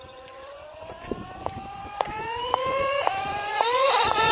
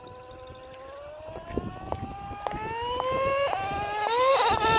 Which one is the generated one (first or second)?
first